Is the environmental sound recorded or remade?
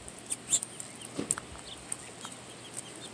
recorded